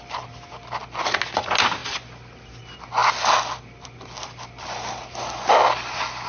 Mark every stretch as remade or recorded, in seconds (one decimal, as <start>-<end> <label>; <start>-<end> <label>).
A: 0.0-6.3 recorded